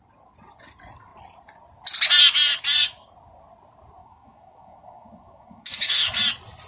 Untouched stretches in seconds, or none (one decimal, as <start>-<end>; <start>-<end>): 0.0-4.0; 6.2-6.7